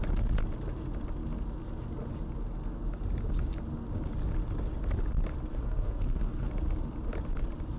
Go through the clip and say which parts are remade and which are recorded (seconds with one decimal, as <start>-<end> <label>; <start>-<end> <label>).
0.0-5.5 recorded; 5.5-6.5 remade; 6.5-7.8 recorded